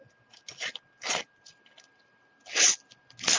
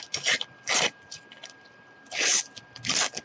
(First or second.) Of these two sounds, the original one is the first